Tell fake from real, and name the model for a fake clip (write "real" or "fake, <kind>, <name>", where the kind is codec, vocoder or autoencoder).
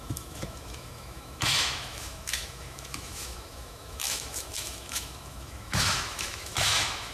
fake, autoencoder, DAC-VAE